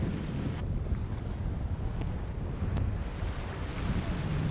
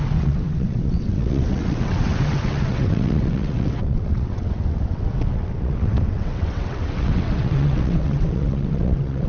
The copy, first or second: second